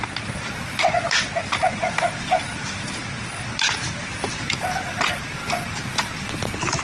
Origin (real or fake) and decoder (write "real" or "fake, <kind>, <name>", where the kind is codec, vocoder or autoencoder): real